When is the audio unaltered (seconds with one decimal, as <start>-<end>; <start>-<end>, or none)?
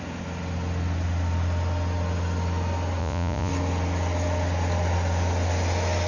0.0-3.0; 3.5-6.1